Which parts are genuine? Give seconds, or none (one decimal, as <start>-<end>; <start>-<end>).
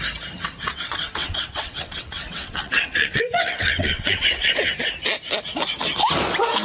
0.0-0.7; 4.7-6.6